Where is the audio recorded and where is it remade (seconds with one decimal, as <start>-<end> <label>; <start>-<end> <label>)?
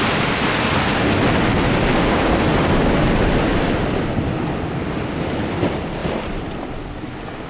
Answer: 0.0-7.5 recorded